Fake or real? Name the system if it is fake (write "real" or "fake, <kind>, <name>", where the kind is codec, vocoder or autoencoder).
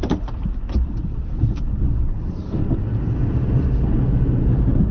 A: real